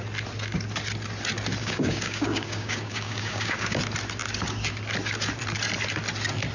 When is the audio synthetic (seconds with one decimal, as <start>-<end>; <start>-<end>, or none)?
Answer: 1.6-3.8